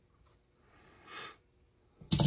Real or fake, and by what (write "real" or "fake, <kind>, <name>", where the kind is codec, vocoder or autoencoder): real